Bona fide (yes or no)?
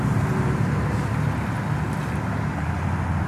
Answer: yes